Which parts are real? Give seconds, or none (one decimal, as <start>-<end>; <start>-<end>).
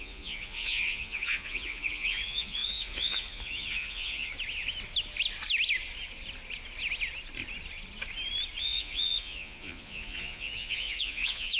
4.3-8.6